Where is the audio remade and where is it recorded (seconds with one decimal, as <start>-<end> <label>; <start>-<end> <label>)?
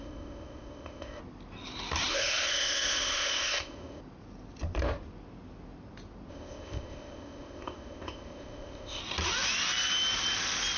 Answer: 0.0-1.2 remade; 1.2-2.1 recorded; 2.1-4.0 remade; 4.0-6.3 recorded; 6.3-9.0 remade; 9.0-10.8 recorded